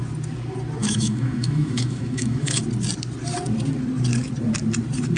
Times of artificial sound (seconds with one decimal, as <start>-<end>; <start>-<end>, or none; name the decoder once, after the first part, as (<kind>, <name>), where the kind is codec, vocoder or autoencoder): 0.8-2.6 (autoencoder, DAC-VAE)